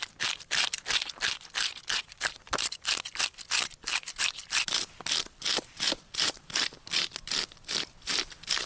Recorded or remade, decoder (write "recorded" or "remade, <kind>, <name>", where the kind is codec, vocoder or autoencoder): remade, vocoder, BigVGAN v2